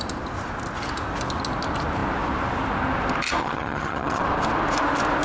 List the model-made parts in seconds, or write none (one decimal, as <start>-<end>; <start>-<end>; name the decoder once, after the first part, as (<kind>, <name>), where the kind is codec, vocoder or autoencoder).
3.4-4.2 (vocoder, HiFi-GAN)